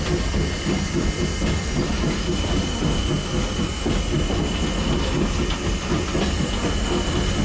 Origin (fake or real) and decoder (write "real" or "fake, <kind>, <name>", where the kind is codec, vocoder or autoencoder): real